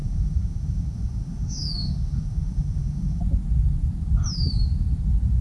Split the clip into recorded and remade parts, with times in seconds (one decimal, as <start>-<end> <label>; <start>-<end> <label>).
0.0-3.2 remade; 3.2-5.4 recorded